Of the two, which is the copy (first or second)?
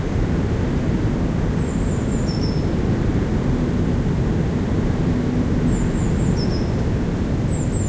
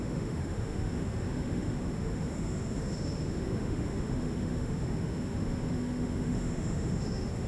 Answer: second